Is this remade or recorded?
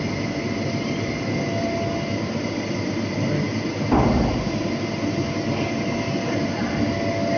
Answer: recorded